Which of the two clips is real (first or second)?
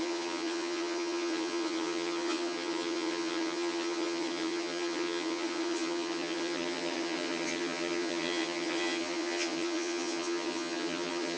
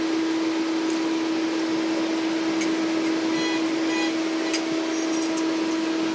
second